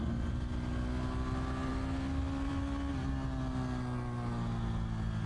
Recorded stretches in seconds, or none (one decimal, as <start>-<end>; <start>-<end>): 0.0-5.3